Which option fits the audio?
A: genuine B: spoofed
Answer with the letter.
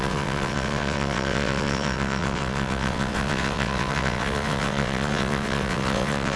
B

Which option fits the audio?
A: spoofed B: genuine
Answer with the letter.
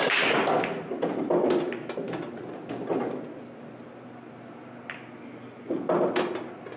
B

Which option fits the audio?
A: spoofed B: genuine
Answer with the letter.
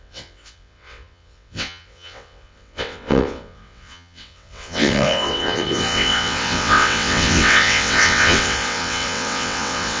A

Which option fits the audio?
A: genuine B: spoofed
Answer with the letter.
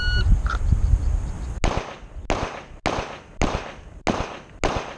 A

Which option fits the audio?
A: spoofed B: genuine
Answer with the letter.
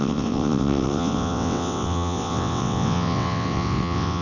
A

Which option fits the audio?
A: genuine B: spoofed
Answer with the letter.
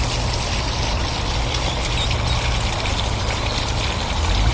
A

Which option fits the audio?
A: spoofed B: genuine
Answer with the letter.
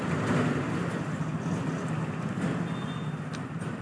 B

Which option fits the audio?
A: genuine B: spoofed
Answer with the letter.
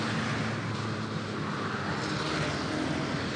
A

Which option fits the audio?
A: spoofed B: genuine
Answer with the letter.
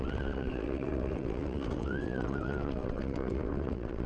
A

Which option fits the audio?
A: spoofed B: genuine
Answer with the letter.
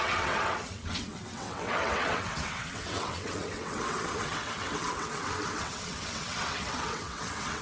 A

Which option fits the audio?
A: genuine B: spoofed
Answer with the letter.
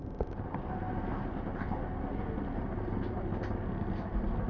A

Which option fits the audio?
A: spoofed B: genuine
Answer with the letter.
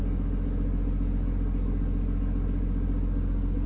B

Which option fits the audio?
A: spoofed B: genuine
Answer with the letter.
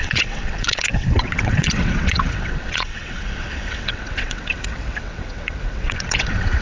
A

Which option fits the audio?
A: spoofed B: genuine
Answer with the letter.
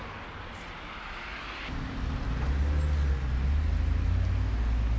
B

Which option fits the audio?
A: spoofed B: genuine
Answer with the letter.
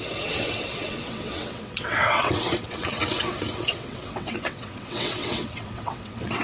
A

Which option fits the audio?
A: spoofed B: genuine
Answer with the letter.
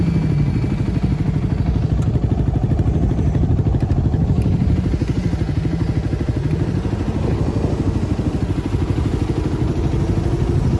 B